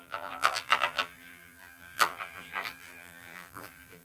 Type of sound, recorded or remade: remade